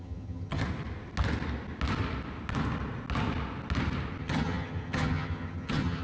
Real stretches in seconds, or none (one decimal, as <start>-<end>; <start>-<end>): 0.6-4.2